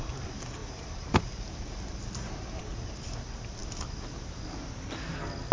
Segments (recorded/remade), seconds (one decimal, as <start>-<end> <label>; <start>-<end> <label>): 0.0-0.6 recorded; 0.6-2.6 remade; 2.6-5.5 recorded

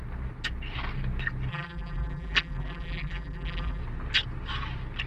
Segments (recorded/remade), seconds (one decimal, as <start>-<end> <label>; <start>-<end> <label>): 0.0-1.5 recorded; 1.5-3.8 remade; 3.8-5.1 recorded

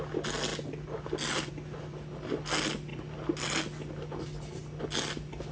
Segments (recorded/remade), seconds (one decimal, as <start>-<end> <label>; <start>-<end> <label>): 0.0-5.5 recorded

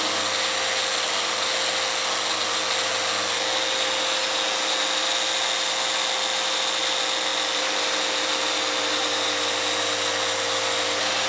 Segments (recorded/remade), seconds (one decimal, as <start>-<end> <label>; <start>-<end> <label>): 0.0-11.3 recorded

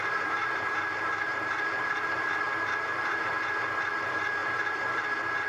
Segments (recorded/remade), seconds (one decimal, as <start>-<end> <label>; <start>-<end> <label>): 0.0-3.3 remade; 3.3-4.4 recorded; 4.4-5.5 remade

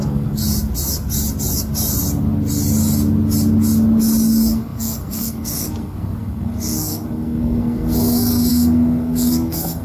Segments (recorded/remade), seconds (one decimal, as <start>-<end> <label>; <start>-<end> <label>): 0.0-0.4 remade; 0.4-4.3 recorded; 4.3-9.8 remade

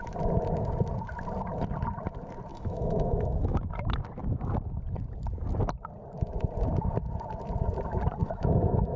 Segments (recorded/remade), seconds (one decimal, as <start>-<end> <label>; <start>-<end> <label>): 0.0-2.5 recorded; 2.5-3.6 remade; 3.6-8.2 recorded; 8.2-9.0 remade

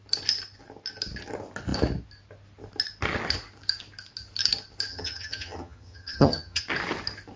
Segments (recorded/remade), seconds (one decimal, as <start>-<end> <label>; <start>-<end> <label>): 0.0-4.9 recorded; 4.9-6.6 remade; 6.6-7.4 recorded